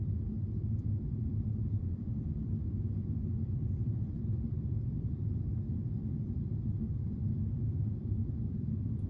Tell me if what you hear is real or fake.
fake